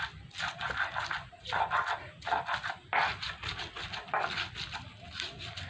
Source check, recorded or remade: recorded